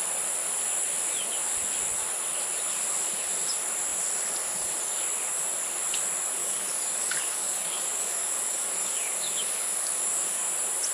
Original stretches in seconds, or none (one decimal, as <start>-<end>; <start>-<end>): 0.0-6.4; 10.5-10.9